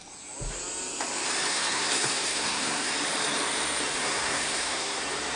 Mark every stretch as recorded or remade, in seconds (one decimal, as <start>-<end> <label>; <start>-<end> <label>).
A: 0.0-1.5 recorded; 1.5-2.9 remade; 2.9-4.0 recorded; 4.0-5.0 remade; 5.0-5.4 recorded